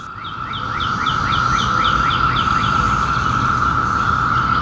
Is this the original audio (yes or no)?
yes